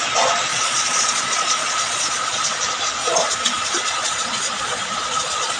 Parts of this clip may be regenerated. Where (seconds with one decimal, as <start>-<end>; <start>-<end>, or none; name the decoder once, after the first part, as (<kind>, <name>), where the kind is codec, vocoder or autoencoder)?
0.5-2.6 (vocoder, Vocos); 3.0-5.6